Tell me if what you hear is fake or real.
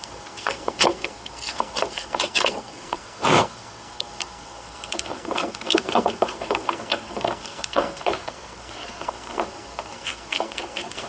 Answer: fake